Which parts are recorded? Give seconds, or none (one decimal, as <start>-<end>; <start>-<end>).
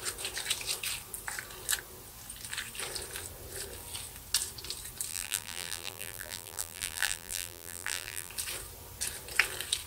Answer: 0.0-5.1; 8.3-9.9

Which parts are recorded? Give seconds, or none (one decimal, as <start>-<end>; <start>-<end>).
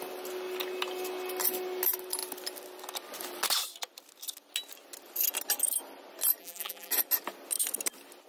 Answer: 0.0-6.4; 6.9-8.3